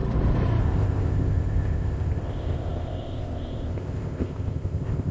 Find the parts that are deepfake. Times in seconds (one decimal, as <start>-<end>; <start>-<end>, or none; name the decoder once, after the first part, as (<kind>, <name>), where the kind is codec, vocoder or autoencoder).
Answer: 0.6-5.1 (codec, ZipCodec)